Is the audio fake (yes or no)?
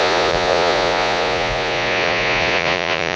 yes